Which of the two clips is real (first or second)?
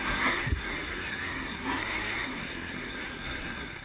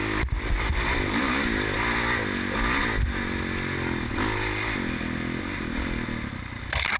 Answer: second